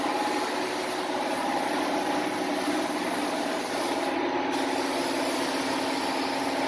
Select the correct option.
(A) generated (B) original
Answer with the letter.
B